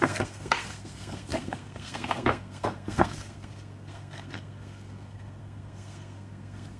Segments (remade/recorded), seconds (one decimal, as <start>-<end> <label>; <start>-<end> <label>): 0.0-6.8 remade